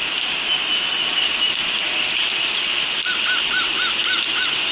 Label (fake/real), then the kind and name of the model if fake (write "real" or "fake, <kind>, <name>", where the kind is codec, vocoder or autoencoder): real